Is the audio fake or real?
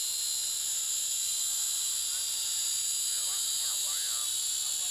real